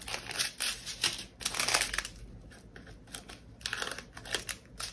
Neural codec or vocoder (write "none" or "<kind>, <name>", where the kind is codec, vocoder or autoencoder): none